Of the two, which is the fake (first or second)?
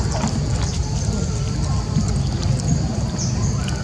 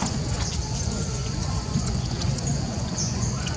second